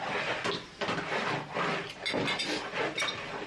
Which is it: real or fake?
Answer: real